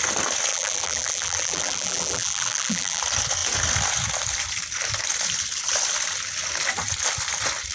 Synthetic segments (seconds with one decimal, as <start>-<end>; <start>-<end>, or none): 0.5-3.0

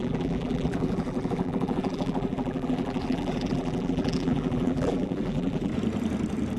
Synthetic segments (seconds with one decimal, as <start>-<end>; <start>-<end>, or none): 0.0-5.7

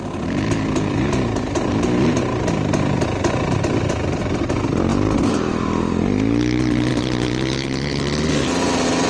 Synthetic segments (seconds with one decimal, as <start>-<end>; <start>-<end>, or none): 4.9-6.0

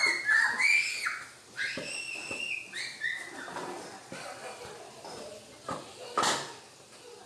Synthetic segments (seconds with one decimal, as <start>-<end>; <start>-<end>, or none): 4.4-7.3

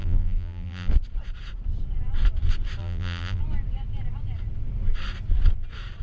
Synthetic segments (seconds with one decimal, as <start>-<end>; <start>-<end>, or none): 0.0-0.9; 2.8-3.4

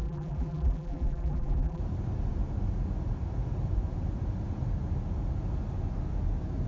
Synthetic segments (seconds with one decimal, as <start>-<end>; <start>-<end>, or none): 0.0-1.8

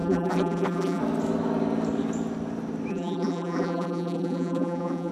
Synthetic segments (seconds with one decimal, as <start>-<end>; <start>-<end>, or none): 0.0-1.0; 2.9-5.1